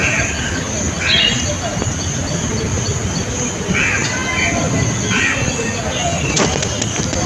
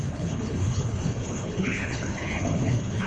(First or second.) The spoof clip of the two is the second